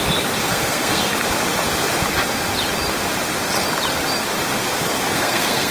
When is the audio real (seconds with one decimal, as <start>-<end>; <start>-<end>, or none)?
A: 0.0-0.4; 1.1-4.6

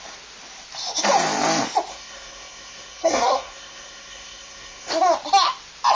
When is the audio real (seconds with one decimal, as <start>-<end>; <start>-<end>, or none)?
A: 0.0-1.9; 4.9-5.9